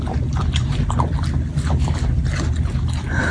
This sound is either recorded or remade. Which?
recorded